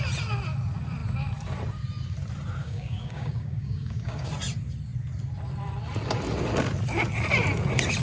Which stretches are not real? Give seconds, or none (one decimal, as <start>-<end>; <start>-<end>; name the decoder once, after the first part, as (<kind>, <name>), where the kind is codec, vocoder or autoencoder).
2.6-4.3 (codec, DAC)